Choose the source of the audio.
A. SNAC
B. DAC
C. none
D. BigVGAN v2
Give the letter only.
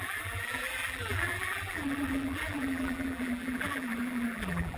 D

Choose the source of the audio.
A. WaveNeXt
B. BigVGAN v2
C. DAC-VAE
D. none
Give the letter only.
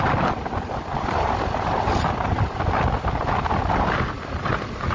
D